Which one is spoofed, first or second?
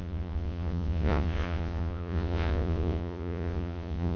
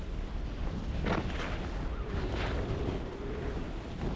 first